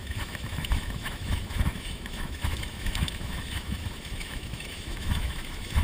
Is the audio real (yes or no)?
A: no